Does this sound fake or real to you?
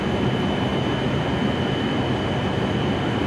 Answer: real